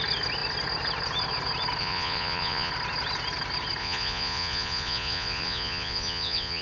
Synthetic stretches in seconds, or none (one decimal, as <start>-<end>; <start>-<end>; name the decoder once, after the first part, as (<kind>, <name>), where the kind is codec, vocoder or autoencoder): 1.8-2.7 (vocoder, Vocos); 3.8-6.6